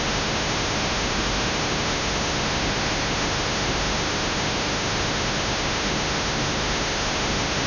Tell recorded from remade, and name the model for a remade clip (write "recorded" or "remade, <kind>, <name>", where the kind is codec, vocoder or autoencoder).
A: remade, autoencoder, DAC-VAE